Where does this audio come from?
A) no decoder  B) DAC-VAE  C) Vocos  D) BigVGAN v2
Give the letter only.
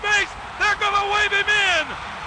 A